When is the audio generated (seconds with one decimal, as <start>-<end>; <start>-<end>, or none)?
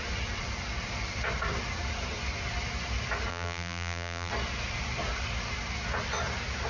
3.3-4.3